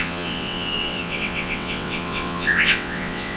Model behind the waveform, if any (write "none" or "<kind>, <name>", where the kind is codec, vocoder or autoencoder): vocoder, WaveNeXt